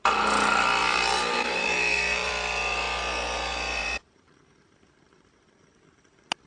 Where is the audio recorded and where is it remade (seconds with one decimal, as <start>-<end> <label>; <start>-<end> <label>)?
0.0-0.8 recorded; 0.8-2.3 remade; 2.3-3.8 recorded; 3.8-5.8 remade; 5.8-6.5 recorded